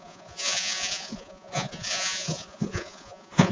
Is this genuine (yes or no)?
no